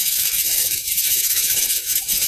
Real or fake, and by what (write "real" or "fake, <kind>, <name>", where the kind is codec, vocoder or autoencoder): fake, autoencoder, DAC-VAE